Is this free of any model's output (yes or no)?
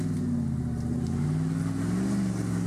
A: yes